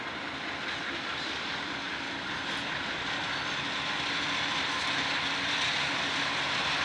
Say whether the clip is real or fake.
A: real